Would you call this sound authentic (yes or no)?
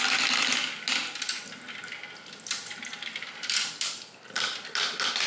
yes